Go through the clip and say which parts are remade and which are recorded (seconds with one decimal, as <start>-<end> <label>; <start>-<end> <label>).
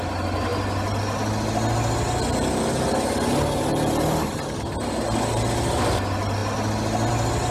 0.0-7.5 recorded